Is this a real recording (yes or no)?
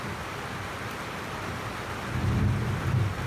yes